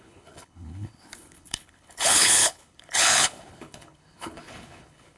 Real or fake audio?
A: fake